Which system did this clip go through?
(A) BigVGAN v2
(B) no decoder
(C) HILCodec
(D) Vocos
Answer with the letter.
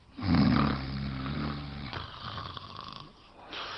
B